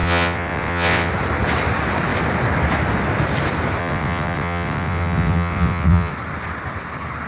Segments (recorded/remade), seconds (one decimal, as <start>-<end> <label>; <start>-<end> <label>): 0.0-1.1 remade; 1.1-3.8 recorded; 3.8-6.1 remade; 6.1-7.3 recorded